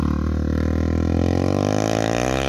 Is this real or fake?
real